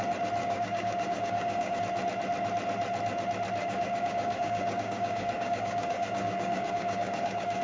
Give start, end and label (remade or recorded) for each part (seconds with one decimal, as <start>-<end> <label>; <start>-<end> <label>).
0.0-0.4 recorded; 0.4-1.8 remade; 1.8-3.6 recorded; 3.6-7.6 remade